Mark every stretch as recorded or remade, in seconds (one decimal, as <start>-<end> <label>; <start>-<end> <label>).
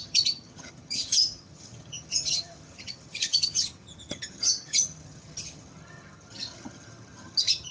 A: 0.0-7.7 remade